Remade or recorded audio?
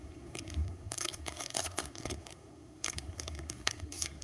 remade